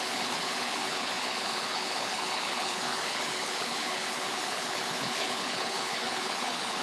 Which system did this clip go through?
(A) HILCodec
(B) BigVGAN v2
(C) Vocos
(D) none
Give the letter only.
A